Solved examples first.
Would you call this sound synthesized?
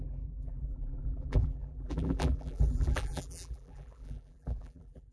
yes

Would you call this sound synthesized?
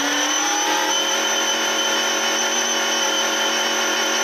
no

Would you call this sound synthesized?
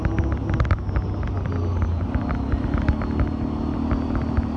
no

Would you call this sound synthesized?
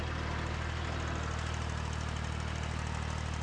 no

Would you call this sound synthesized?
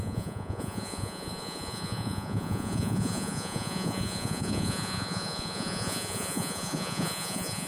yes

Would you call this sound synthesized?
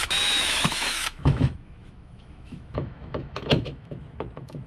yes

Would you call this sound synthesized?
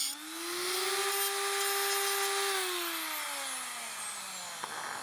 no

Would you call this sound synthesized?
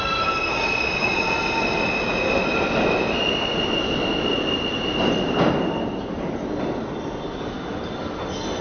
no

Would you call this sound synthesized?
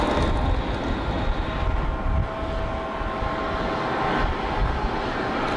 no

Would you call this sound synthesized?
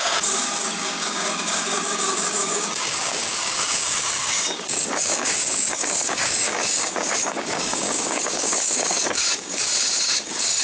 yes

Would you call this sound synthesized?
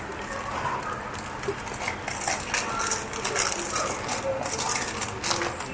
no